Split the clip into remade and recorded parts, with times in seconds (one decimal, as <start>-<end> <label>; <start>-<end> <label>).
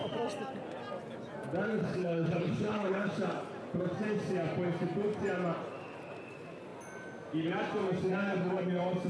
0.0-1.8 recorded; 1.8-3.2 remade; 3.2-9.1 recorded